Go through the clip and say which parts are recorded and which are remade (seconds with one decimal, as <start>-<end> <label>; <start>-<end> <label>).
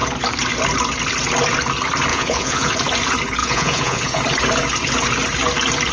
0.0-2.1 recorded; 2.1-2.7 remade; 2.7-3.4 recorded; 3.4-4.2 remade; 4.2-5.9 recorded